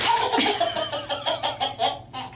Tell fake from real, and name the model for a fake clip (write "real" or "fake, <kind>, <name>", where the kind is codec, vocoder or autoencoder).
real